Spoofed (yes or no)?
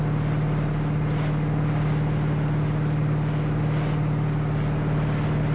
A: no